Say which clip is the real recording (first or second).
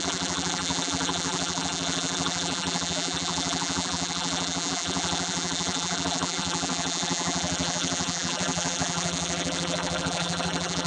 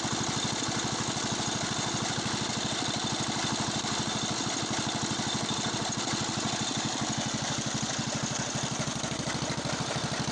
second